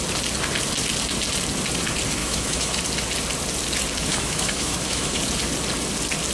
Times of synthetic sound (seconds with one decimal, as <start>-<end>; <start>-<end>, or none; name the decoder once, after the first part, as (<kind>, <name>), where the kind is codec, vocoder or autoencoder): 2.2-2.8 (autoencoder, DAC-VAE); 4.1-5.2